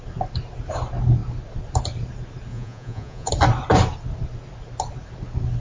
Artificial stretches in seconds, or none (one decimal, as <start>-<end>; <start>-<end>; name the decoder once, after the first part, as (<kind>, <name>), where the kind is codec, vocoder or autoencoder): 2.5-3.3 (vocoder, Vocos)